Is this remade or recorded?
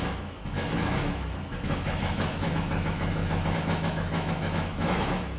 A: remade